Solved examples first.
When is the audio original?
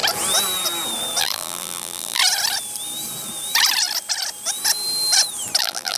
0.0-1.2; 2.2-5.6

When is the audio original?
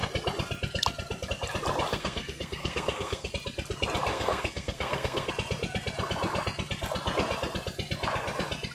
0.0-1.9; 3.3-4.1; 5.3-8.7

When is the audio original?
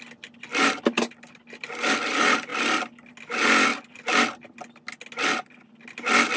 0.0-6.4